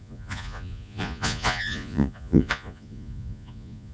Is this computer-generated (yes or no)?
yes